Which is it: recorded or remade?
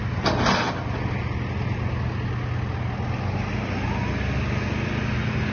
recorded